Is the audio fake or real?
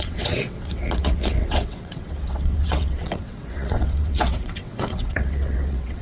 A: fake